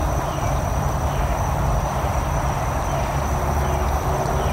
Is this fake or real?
real